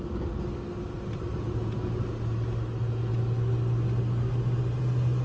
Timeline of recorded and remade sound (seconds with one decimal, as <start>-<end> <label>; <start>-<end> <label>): 0.0-5.2 recorded